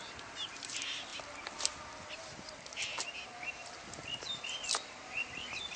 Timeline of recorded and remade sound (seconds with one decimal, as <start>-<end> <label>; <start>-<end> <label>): 0.0-5.8 recorded